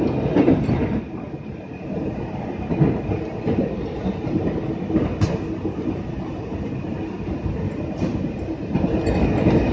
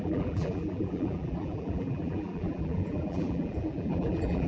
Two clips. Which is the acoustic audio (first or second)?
first